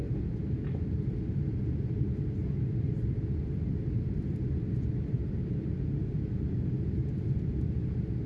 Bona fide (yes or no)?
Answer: no